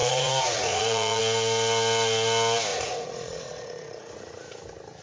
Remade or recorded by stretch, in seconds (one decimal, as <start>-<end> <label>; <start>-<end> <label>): 0.0-1.2 remade; 1.2-2.7 recorded; 2.7-4.6 remade; 4.6-5.0 recorded